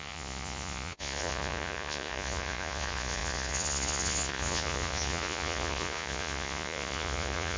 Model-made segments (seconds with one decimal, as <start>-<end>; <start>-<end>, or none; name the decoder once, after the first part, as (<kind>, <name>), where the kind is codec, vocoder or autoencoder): 0.0-7.6 (vocoder, Vocos)